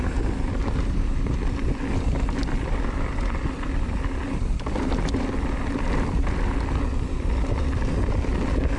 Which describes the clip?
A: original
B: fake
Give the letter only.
A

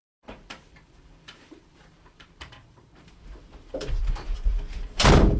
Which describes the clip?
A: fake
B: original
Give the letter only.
A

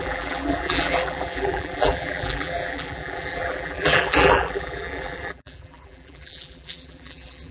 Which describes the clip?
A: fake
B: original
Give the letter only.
A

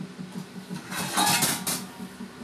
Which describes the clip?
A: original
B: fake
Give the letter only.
A